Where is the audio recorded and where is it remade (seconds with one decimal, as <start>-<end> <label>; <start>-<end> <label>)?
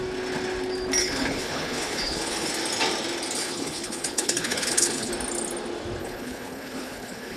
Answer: 0.0-1.0 recorded; 1.0-2.5 remade; 2.5-3.4 recorded; 3.4-5.1 remade; 5.1-6.0 recorded; 6.0-7.4 remade